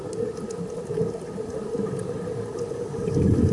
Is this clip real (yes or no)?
yes